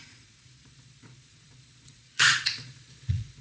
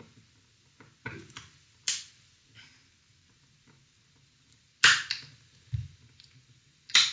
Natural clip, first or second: second